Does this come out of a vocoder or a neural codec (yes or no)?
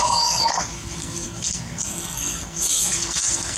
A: yes